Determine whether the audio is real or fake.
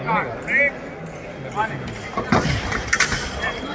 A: real